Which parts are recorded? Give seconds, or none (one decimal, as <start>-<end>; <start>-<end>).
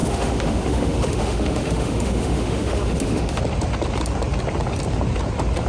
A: 3.4-5.7